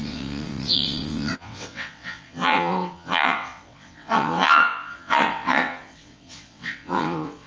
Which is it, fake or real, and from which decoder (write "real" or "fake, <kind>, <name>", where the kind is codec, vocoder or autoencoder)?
fake, vocoder, WaveNeXt